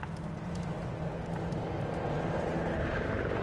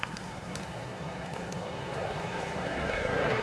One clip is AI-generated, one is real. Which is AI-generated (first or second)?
second